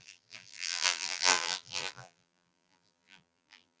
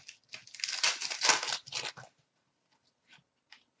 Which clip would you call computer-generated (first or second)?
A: first